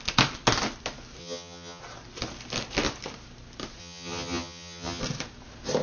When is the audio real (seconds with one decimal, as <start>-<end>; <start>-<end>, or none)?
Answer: 0.0-1.2; 1.8-3.8; 5.0-5.8